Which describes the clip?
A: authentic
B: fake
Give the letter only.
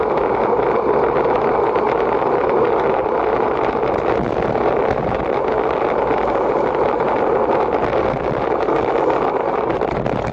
A